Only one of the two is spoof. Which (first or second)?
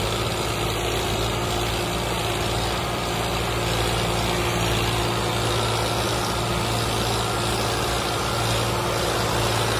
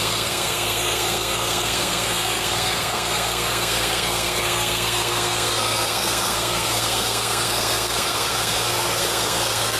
second